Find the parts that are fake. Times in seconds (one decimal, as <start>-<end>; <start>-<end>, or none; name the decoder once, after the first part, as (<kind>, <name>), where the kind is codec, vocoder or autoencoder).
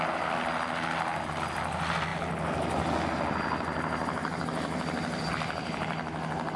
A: none